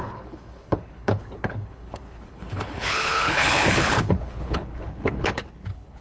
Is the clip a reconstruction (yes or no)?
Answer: yes